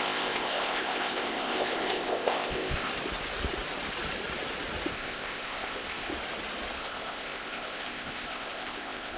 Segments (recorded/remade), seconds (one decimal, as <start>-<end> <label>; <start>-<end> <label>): 0.0-2.9 remade; 2.9-4.9 recorded; 4.9-6.1 remade; 6.1-6.8 recorded; 6.8-9.2 remade